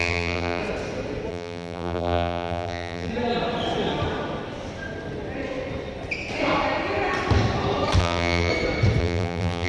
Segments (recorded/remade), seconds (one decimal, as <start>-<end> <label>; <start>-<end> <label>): 0.0-0.6 remade; 0.6-1.3 recorded; 1.3-3.1 remade; 3.1-8.0 recorded; 8.0-8.5 remade; 8.5-9.0 recorded; 9.0-9.7 remade